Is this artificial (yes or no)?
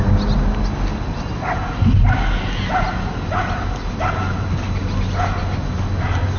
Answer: no